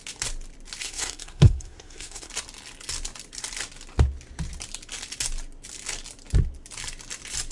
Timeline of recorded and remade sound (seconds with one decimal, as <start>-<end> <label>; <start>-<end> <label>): 0.0-0.8 recorded; 0.8-2.3 remade; 2.3-7.5 recorded

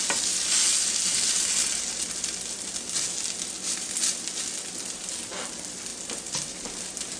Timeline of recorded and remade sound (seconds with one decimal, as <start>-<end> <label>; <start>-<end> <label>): 0.0-7.2 recorded

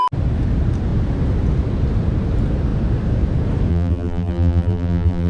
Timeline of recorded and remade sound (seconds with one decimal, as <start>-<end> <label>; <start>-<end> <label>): 0.0-3.7 recorded; 3.7-5.3 remade